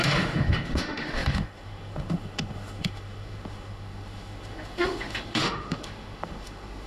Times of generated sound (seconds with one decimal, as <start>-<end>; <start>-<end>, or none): 0.0-6.9